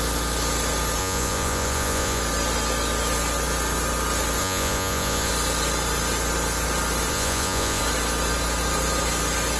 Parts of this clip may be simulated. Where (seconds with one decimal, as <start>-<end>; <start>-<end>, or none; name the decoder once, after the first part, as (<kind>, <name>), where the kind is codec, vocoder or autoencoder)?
1.0-2.2 (vocoder, Vocos); 4.4-5.3; 7.1-7.8